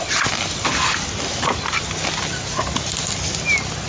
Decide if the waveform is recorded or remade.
recorded